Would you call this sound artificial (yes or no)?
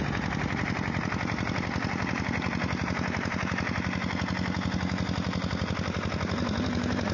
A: no